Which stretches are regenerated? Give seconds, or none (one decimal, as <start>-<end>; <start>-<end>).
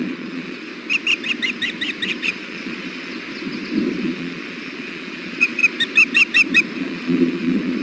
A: 0.0-0.7; 2.2-3.1; 4.0-5.6; 6.8-7.8